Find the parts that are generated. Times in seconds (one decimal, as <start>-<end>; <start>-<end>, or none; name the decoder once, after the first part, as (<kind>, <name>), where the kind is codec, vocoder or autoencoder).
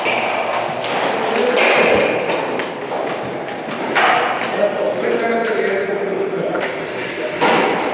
5.4-6.6 (vocoder, BigVGAN v2)